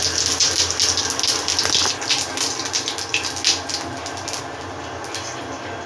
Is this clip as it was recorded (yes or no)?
yes